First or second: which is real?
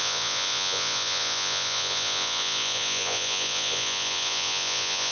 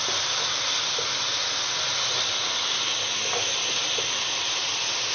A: second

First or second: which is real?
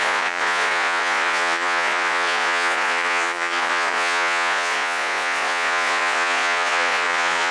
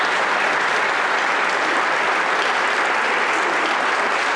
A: second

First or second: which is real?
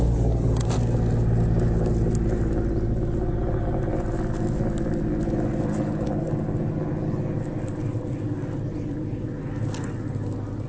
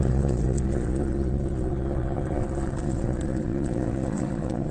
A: first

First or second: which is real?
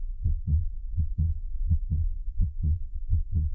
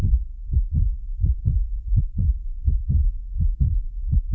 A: second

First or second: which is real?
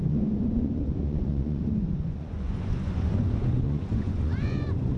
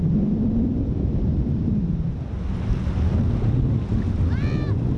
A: second